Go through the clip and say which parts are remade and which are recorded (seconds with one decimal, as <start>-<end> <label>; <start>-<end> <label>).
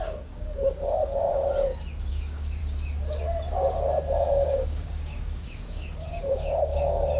0.0-1.0 remade; 1.0-2.1 recorded; 2.1-2.6 remade; 2.6-4.3 recorded; 4.3-7.2 remade